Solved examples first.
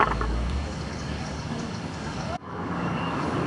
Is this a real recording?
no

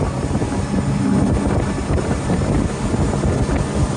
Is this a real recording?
yes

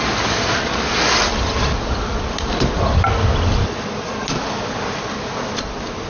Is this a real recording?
yes